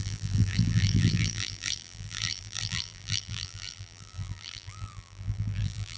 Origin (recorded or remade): remade